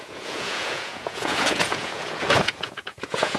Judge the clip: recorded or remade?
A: remade